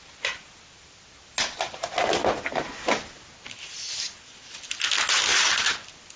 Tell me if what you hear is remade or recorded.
recorded